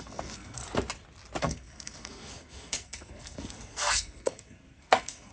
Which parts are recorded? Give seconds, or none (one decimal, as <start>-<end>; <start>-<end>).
0.6-1.4

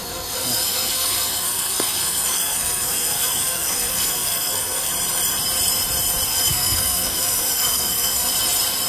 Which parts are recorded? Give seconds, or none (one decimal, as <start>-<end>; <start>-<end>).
4.9-6.3; 8.3-8.9

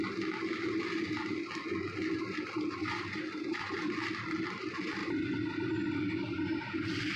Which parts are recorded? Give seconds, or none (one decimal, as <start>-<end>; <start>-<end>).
0.0-7.2

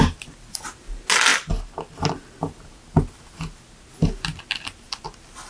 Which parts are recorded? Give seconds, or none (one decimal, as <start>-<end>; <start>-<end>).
0.0-5.5

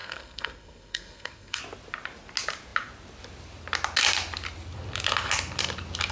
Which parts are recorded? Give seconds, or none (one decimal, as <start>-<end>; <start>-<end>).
1.6-6.1